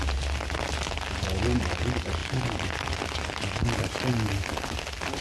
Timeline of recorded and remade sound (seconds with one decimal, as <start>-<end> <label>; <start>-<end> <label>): 0.0-2.2 recorded; 2.2-3.0 remade; 3.0-5.2 recorded